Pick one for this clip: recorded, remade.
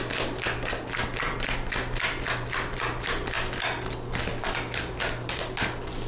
recorded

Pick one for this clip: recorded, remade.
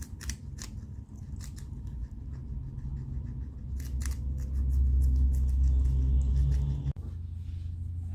recorded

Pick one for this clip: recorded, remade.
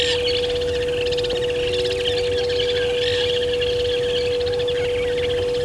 recorded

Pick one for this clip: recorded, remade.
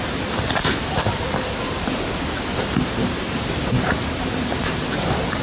remade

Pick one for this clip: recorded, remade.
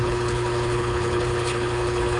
remade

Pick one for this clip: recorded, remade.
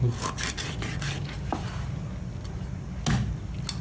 recorded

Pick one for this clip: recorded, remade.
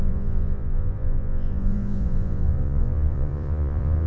remade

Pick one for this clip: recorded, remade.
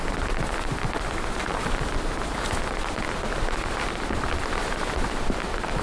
remade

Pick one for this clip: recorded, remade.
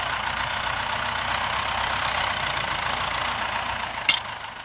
recorded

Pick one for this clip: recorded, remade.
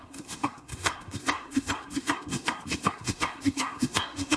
remade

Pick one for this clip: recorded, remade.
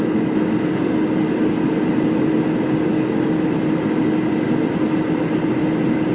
recorded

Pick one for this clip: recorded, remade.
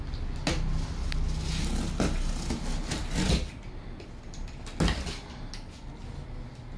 recorded